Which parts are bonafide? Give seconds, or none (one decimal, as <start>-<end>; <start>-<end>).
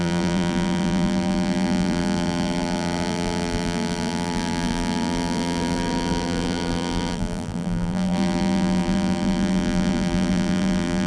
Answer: none